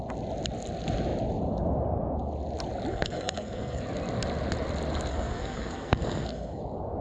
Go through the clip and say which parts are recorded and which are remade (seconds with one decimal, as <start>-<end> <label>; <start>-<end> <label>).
0.0-2.9 recorded; 2.9-3.8 remade; 3.8-5.1 recorded; 5.1-6.6 remade; 6.6-7.0 recorded